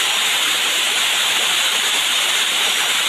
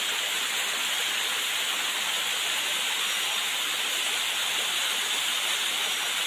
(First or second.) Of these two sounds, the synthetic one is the first